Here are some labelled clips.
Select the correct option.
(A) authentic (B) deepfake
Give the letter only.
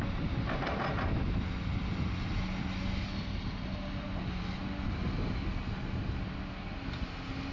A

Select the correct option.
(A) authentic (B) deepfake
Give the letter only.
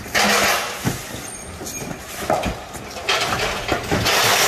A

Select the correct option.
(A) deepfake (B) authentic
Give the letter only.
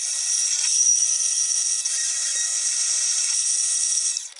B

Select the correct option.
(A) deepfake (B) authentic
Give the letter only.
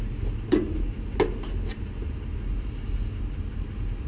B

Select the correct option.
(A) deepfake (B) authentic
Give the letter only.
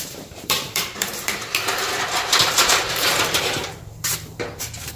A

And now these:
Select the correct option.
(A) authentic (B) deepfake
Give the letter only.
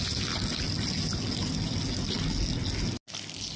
A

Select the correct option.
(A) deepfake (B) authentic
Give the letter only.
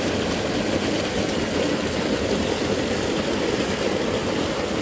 B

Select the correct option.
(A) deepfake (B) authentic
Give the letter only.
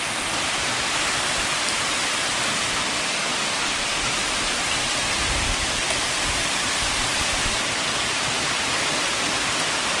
A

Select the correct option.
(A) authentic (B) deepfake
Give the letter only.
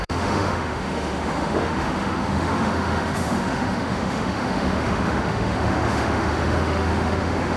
B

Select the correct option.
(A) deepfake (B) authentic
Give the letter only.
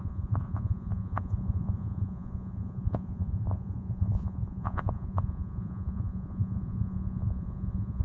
A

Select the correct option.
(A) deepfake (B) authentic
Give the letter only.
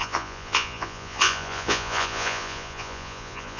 A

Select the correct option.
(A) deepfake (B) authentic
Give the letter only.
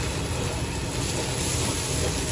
B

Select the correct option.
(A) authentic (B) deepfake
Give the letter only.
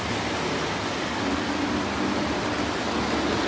A